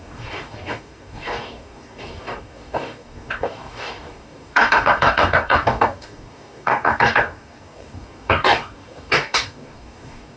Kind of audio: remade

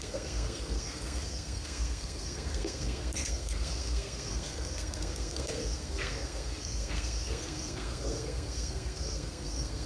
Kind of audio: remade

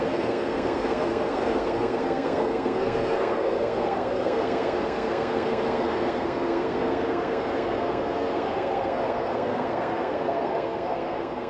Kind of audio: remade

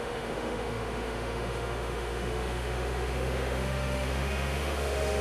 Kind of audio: remade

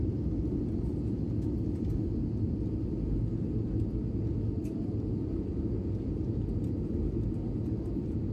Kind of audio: recorded